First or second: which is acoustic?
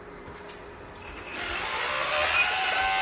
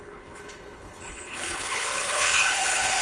first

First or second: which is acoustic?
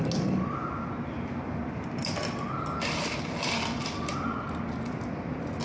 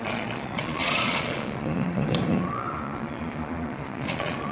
first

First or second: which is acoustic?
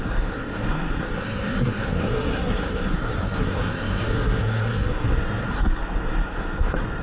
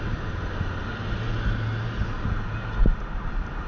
second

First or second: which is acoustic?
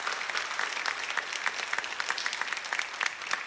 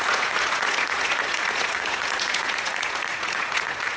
first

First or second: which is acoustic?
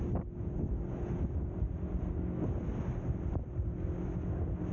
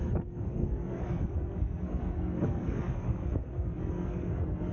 first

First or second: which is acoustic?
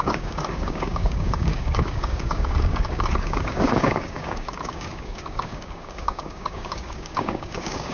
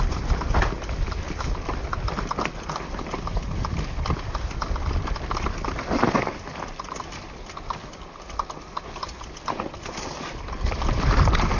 second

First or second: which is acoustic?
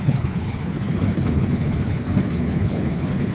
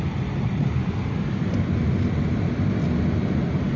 second